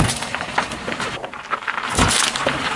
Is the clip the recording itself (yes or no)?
yes